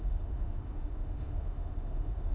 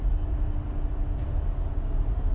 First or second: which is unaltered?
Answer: second